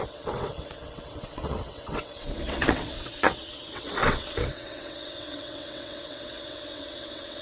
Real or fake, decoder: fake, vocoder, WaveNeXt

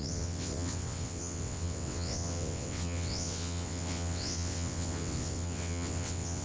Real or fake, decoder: fake, vocoder, WaveNeXt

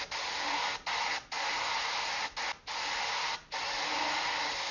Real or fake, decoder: real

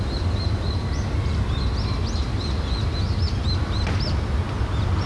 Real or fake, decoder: real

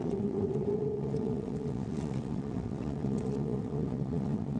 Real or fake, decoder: fake, vocoder, WaveNeXt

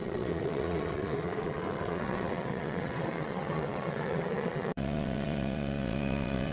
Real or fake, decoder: fake, vocoder, WaveNeXt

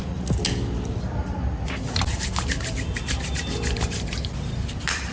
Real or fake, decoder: real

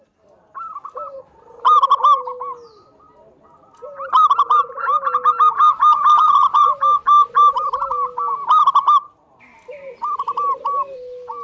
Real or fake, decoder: real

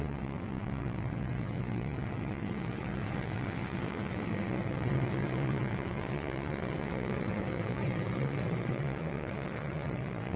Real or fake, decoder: fake, vocoder, WaveNeXt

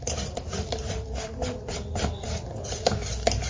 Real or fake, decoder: real